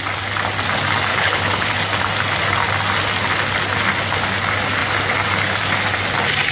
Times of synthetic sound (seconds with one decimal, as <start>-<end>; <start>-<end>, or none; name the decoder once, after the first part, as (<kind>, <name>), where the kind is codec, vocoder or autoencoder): 1.1-1.7 (codec, HILCodec)